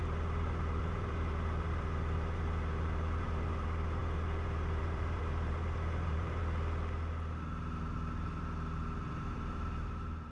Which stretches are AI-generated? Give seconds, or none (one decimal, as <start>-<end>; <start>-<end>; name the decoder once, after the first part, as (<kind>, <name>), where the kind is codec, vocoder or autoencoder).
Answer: 0.0-6.4 (vocoder, BigVGAN v2); 9.1-10.3